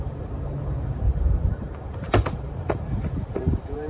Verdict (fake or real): fake